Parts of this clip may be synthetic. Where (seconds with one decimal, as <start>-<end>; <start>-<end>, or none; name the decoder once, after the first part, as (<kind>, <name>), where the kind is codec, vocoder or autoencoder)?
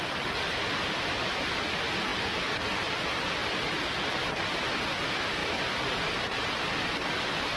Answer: none